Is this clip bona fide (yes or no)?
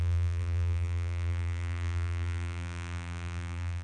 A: no